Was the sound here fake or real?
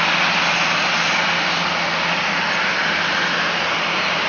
real